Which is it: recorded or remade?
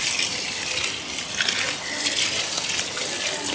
recorded